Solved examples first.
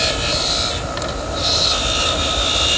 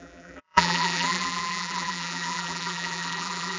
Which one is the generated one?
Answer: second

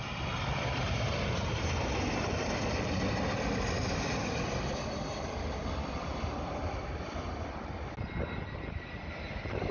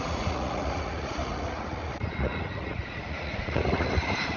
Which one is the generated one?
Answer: second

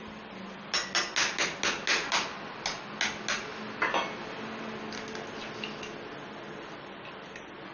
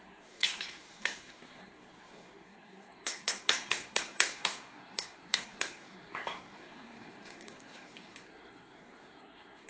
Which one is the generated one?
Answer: second